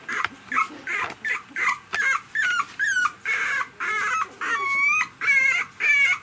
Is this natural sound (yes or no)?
yes